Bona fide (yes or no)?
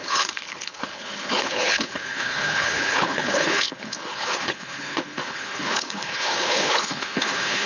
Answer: no